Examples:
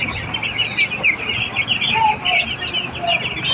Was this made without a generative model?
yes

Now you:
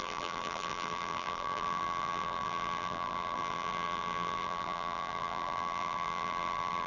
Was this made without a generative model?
no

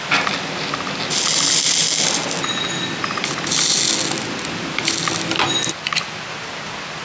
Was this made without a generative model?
yes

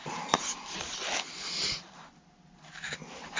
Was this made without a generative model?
yes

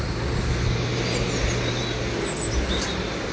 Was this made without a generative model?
yes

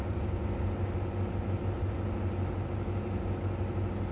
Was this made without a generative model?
yes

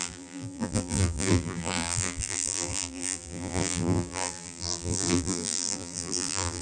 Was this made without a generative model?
no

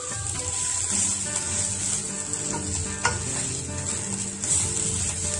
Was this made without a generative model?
yes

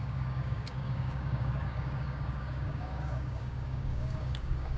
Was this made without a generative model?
no